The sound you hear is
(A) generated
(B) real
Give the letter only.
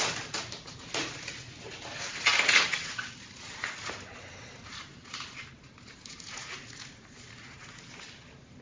B